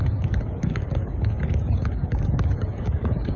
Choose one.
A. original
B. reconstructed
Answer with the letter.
B